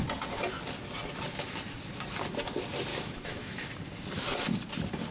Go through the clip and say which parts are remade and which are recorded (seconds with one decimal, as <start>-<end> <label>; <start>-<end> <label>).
0.0-2.9 recorded; 2.9-3.7 remade; 3.7-5.1 recorded